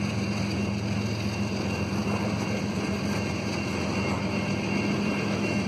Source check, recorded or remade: recorded